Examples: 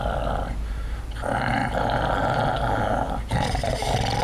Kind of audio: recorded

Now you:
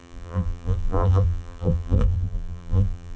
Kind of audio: remade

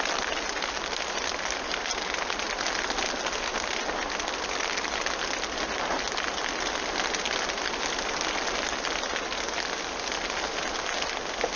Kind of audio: recorded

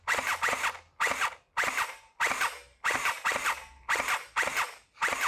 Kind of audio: recorded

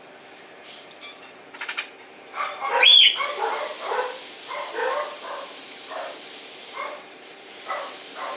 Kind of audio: remade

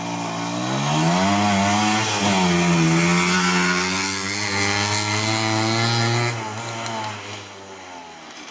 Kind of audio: recorded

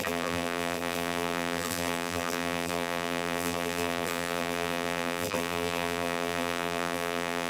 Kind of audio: remade